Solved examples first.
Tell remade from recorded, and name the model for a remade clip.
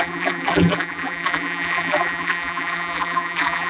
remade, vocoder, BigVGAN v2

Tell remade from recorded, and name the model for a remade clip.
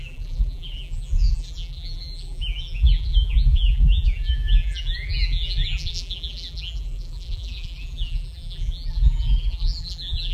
remade, vocoder, BigVGAN v2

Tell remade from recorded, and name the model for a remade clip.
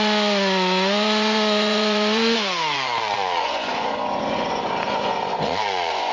remade, vocoder, Vocos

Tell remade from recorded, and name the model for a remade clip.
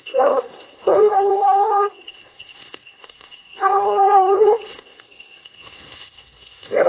remade, codec, SNAC